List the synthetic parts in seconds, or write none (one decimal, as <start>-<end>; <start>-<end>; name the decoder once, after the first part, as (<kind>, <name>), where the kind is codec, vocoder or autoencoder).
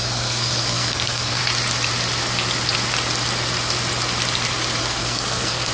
0.0-1.4 (codec, SNAC); 4.8-5.7